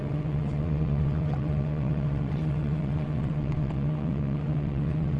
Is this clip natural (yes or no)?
no